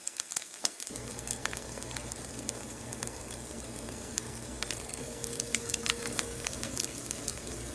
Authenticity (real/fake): fake